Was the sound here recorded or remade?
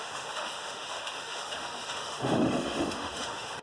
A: remade